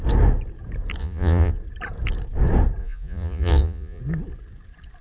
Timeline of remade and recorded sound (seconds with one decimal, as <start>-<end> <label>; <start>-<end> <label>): 0.0-1.0 recorded; 1.0-1.5 remade; 1.5-2.8 recorded; 2.8-4.0 remade; 4.0-5.0 recorded